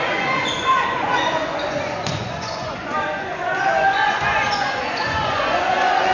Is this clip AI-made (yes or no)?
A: yes